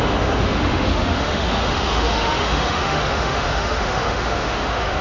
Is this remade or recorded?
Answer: remade